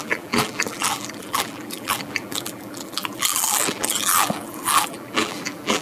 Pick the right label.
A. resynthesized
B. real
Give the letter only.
A